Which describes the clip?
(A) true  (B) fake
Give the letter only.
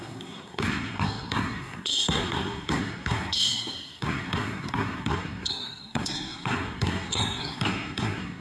B